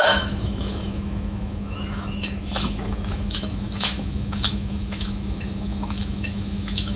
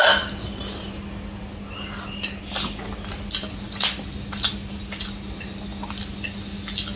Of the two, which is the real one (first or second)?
second